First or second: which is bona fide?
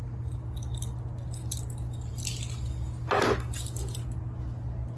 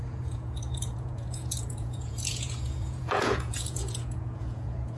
first